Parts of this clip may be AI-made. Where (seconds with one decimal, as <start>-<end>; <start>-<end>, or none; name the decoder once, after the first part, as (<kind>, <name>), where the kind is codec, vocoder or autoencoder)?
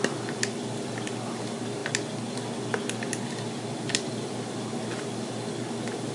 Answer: none